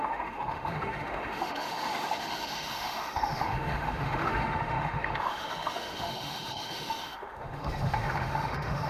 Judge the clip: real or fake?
fake